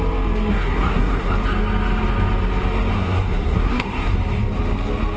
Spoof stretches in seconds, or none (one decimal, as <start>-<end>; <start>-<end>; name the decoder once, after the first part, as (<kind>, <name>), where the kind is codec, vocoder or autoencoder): 0.5-1.3 (codec, SNAC); 2.9-4.2